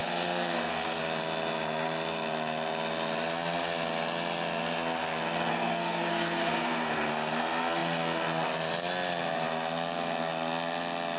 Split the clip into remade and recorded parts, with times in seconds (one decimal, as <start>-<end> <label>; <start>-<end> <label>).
0.0-1.0 remade; 1.0-5.5 recorded; 5.5-7.1 remade; 7.1-11.2 recorded